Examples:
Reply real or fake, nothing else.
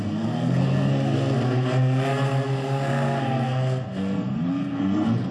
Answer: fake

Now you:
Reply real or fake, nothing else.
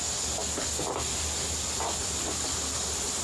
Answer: real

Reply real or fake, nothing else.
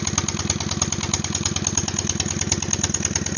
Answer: real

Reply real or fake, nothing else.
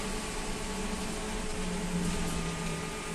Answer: real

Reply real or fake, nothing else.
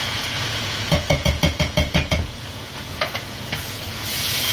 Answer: fake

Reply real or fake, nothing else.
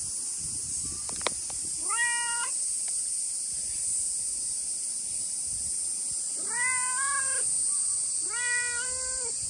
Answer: real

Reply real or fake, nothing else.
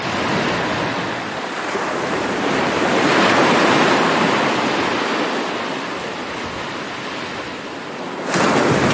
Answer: real